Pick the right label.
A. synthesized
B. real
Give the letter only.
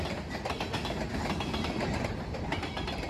B